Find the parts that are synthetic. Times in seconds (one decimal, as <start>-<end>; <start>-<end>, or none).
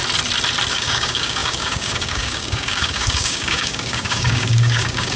0.7-5.2